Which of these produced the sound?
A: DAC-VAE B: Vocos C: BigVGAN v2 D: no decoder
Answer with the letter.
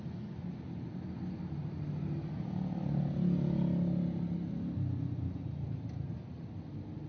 D